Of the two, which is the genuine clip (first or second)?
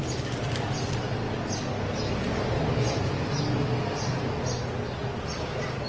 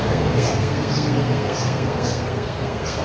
first